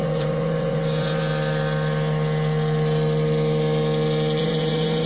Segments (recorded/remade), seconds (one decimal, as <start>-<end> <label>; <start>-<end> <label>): 0.0-1.3 remade; 1.3-4.4 recorded; 4.4-5.1 remade